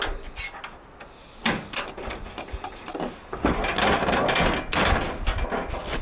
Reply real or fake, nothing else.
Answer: real